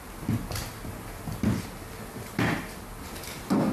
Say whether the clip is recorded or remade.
recorded